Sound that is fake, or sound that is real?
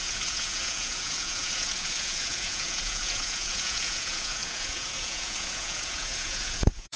fake